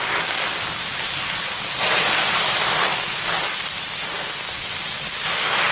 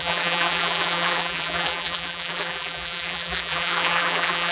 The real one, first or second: first